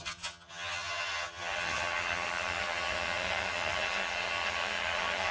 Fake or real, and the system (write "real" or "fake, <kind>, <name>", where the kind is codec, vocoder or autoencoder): fake, vocoder, HiFi-GAN